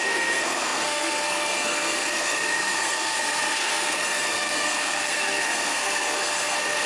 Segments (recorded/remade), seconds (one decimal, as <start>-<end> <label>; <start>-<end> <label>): 0.0-6.9 remade

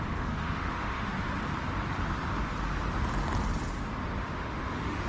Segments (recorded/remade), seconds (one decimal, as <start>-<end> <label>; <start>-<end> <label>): 0.0-1.1 remade; 1.1-4.2 recorded; 4.2-5.1 remade

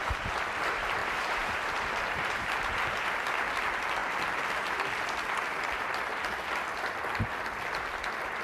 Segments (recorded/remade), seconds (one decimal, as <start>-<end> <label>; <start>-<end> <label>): 0.0-1.0 recorded; 1.0-3.1 remade; 3.1-8.4 recorded

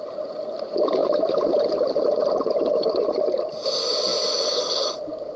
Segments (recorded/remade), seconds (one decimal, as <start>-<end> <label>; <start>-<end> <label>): 0.0-1.0 recorded; 1.0-2.5 remade; 2.5-5.4 recorded

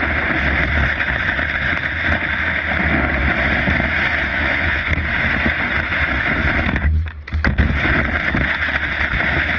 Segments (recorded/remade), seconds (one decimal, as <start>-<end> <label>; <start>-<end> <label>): 0.0-4.3 recorded; 4.3-4.9 remade; 4.9-9.6 recorded

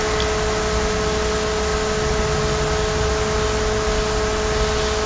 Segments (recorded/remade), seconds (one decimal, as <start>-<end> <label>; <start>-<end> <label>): 0.0-5.1 recorded

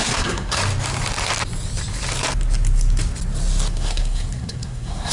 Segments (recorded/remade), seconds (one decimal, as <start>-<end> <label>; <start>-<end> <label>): 0.0-0.6 remade; 0.6-3.7 recorded; 3.7-5.1 remade